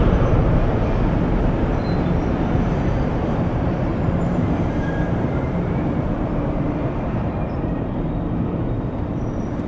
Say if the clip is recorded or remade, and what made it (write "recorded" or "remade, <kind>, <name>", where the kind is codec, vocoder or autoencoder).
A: remade, vocoder, BigVGAN v2